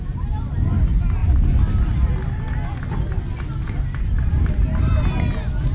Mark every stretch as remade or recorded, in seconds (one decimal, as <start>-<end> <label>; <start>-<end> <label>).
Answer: 0.0-5.7 recorded